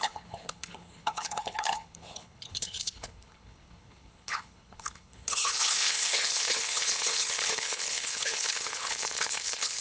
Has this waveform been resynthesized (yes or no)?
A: yes